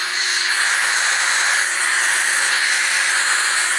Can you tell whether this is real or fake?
fake